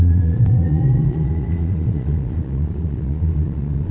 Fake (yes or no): yes